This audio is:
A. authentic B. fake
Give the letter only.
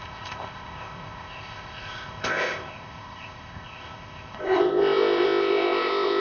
B